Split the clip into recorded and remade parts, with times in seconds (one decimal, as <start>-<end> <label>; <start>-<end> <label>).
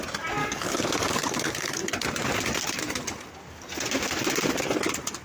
0.0-0.4 recorded; 0.4-1.9 remade; 1.9-5.2 recorded